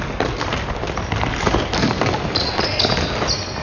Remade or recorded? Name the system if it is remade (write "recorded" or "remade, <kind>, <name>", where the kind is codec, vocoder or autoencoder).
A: recorded